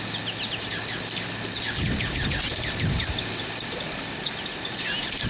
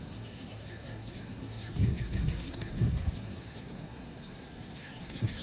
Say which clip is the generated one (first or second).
second